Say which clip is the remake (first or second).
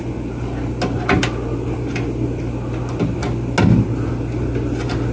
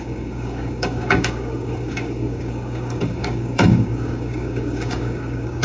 second